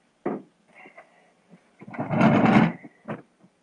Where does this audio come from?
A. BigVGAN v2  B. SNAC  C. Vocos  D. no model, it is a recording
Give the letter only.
D